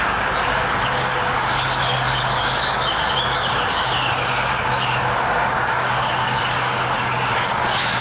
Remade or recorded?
remade